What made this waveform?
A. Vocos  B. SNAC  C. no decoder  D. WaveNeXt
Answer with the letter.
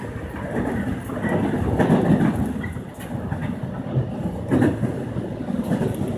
C